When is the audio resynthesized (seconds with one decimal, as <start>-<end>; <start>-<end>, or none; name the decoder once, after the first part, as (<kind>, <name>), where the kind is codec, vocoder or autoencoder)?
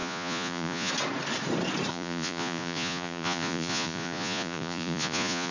0.0-0.9 (vocoder, Vocos); 1.9-5.5